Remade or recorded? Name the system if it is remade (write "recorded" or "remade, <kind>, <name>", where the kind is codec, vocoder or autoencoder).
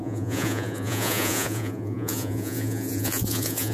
remade, vocoder, Vocos